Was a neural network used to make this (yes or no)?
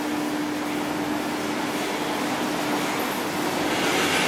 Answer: no